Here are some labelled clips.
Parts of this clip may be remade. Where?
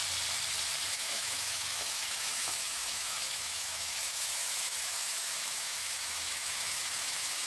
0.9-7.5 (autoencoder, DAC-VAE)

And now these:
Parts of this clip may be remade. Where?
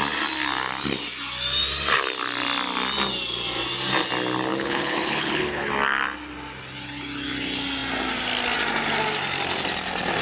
4.5-5.7 (codec, HILCodec)